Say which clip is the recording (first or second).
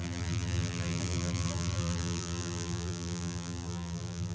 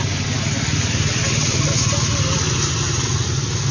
second